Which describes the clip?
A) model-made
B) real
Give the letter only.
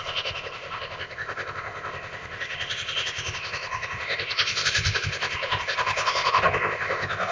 A